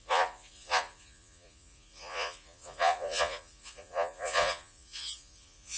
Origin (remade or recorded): remade